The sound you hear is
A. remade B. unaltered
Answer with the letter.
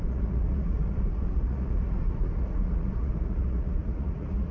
A